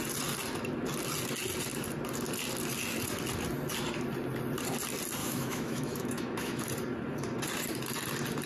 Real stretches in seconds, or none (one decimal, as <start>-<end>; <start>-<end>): 0.0-5.2; 6.6-8.5